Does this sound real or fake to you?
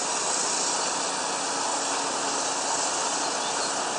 real